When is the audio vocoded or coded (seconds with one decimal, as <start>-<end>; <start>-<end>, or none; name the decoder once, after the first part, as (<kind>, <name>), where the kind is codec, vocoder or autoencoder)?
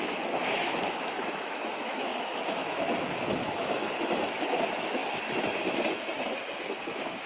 0.0-5.0 (autoencoder, DAC-VAE); 6.6-7.3